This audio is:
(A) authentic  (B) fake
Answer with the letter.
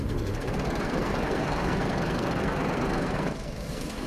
B